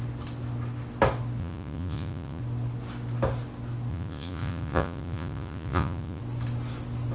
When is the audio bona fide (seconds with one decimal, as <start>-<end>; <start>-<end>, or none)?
0.0-1.4; 2.4-3.9; 6.2-7.1